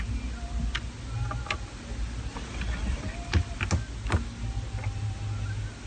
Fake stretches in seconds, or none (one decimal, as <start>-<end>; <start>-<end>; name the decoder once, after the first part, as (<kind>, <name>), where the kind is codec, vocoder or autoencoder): none